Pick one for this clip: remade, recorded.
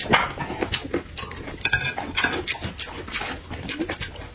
recorded